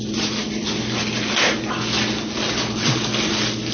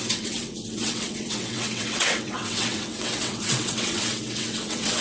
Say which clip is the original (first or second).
first